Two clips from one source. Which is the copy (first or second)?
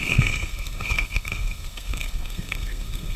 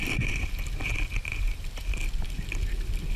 first